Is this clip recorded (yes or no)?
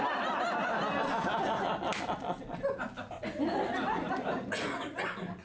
yes